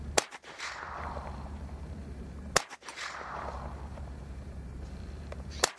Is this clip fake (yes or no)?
yes